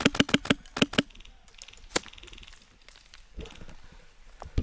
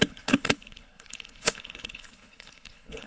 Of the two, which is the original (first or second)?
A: first